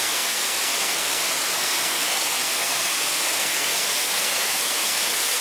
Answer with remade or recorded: remade